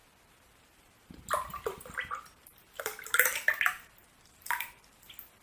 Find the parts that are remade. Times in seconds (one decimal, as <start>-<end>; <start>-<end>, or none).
none